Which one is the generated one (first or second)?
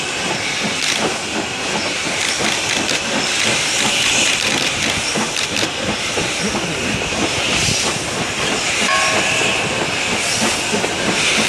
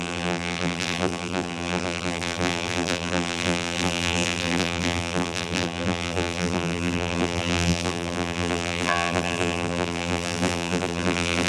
second